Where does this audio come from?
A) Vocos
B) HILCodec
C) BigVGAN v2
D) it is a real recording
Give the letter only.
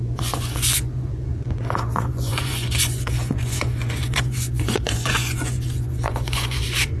A